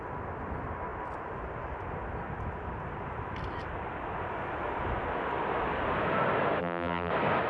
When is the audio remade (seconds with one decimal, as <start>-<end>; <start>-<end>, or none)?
6.6-7.1